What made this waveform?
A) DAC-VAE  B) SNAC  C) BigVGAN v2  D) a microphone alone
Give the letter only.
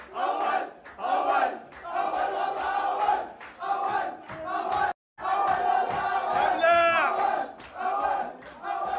D